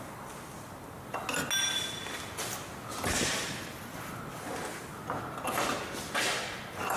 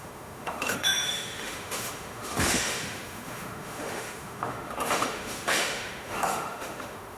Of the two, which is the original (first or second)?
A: first